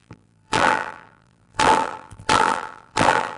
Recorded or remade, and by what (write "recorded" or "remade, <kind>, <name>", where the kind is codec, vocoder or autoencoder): remade, vocoder, BigVGAN v2